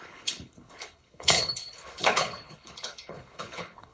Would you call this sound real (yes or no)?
no